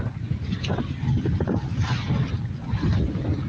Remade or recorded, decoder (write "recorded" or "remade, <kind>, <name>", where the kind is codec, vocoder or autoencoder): recorded